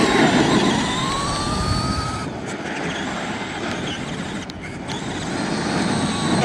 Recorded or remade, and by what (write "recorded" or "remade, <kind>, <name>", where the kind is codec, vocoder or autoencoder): recorded